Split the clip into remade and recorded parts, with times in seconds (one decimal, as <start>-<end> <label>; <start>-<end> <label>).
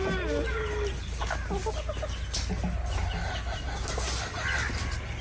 0.0-5.2 recorded